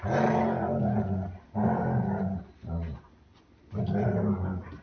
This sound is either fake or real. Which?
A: real